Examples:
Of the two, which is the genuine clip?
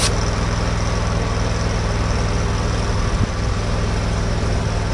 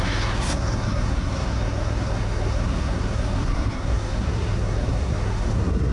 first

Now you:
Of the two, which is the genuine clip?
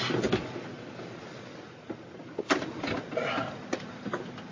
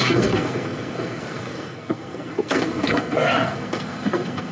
first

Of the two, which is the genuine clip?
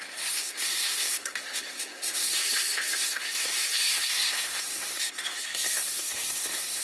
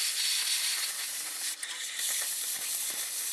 second